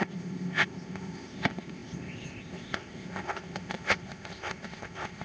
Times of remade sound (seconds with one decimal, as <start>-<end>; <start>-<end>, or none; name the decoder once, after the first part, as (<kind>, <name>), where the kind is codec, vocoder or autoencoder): 0.0-5.2 (codec, ZipCodec)

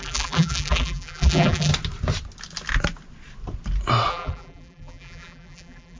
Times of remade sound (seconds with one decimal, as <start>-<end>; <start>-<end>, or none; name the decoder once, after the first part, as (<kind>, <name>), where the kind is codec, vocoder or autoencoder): 0.0-1.7 (vocoder, BigVGAN v2); 4.1-6.0

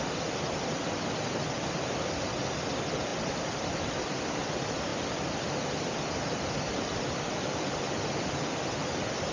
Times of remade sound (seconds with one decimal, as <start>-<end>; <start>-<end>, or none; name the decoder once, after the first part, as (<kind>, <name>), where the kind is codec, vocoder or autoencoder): none

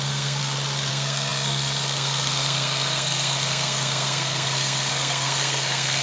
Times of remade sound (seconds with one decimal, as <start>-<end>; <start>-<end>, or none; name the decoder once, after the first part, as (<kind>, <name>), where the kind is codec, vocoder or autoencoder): 0.0-0.4 (codec, SNAC); 0.9-6.0

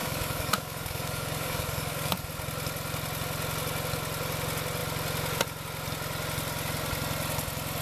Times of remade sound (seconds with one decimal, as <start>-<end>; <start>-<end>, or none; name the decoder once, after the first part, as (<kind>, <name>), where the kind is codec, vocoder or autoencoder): 0.0-2.3 (codec, DAC)